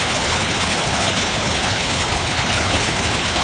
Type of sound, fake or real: fake